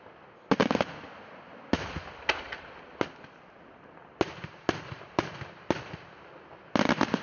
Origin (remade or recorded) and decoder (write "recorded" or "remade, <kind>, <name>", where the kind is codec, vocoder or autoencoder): recorded